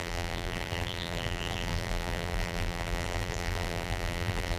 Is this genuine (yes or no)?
no